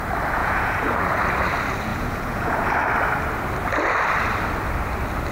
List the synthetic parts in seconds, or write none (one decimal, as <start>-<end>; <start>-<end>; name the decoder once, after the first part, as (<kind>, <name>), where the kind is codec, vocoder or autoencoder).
0.4-1.2 (vocoder, Vocos); 1.9-2.7